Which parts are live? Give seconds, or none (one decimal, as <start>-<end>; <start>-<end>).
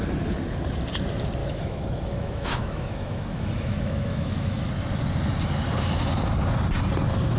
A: 0.0-1.4; 4.7-7.4